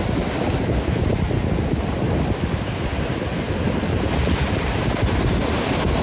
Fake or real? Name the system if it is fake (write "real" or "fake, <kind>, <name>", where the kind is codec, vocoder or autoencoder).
real